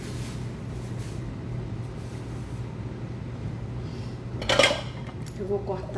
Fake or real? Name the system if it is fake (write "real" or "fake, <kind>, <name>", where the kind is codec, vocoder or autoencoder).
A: real